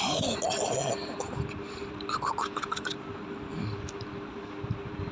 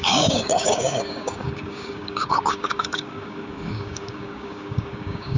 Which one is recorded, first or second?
first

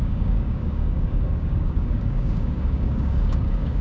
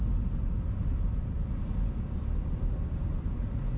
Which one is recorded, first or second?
second